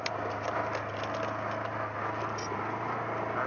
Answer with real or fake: real